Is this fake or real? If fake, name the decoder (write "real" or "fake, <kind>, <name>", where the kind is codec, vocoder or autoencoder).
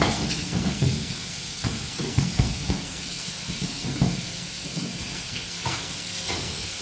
fake, codec, SNAC